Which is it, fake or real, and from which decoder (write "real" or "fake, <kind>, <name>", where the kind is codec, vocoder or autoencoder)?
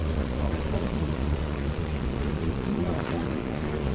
fake, vocoder, Vocos